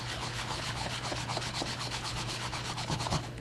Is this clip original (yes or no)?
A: no